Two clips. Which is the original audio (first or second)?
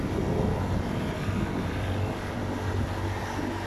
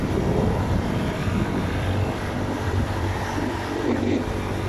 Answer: first